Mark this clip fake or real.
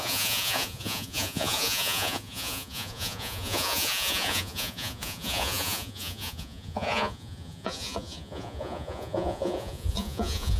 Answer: fake